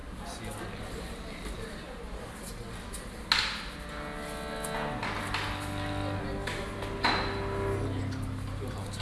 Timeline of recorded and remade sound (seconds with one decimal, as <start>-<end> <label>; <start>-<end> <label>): 0.0-9.0 recorded